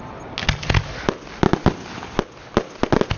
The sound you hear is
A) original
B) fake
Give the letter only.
A